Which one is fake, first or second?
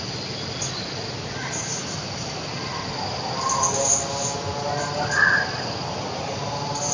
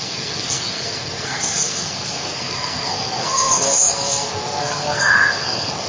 second